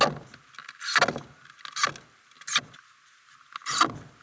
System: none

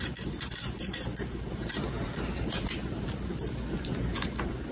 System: vocoder, BigVGAN v2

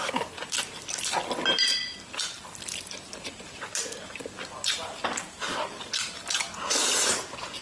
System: none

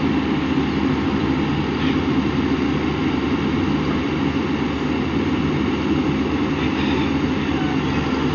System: none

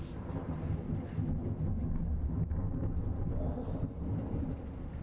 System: none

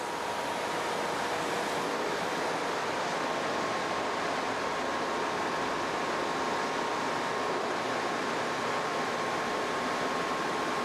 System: none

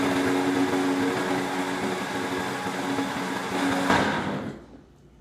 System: none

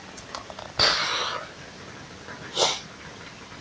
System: none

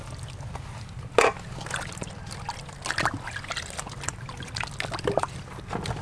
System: none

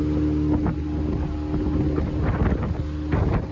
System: none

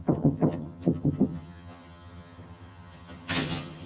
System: vocoder, HiFi-GAN